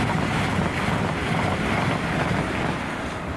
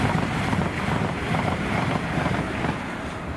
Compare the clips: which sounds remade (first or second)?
second